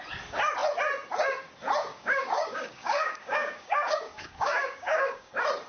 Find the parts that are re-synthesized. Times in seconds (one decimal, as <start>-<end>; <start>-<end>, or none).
1.9-5.3